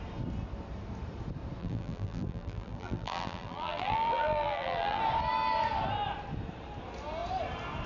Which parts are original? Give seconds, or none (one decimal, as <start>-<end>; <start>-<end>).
0.0-1.6; 5.0-7.9